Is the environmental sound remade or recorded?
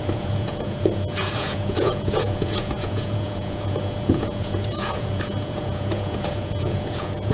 remade